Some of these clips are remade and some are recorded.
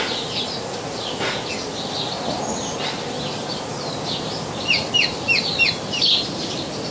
recorded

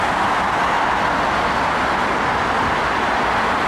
recorded